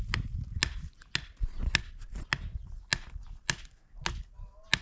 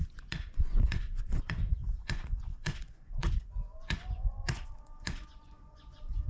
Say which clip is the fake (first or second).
second